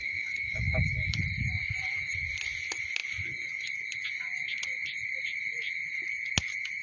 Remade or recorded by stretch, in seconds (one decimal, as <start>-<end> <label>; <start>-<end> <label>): 0.0-1.2 remade; 1.2-6.8 recorded